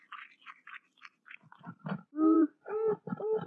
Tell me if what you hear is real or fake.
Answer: fake